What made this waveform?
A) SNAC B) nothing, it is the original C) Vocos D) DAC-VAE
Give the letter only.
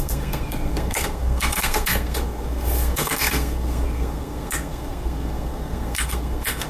A